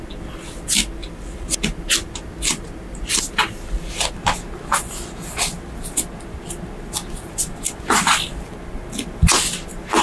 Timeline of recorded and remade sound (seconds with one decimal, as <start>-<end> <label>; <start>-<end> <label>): 0.0-1.0 recorded; 1.0-1.6 remade; 1.6-10.0 recorded